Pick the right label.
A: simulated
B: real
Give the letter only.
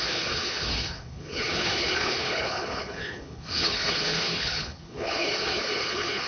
A